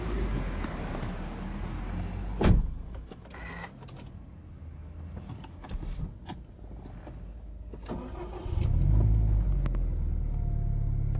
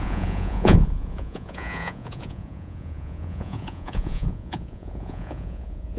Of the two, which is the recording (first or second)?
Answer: first